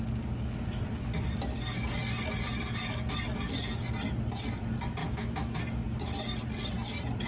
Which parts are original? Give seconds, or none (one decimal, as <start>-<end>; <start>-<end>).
0.0-5.0; 5.6-7.3